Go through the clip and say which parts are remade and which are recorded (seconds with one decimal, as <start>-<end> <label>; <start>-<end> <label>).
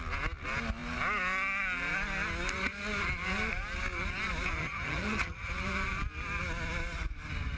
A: 0.0-4.6 recorded; 4.6-5.5 remade; 5.5-7.6 recorded